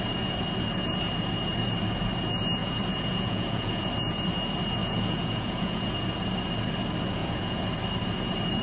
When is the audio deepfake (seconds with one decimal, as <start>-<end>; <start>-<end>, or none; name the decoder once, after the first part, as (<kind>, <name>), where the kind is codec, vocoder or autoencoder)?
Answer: 2.6-3.9 (vocoder, Vocos); 4.8-5.8; 7.2-7.7